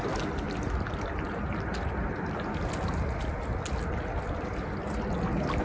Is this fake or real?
real